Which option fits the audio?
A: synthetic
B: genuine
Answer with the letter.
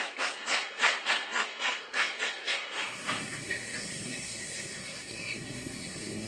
A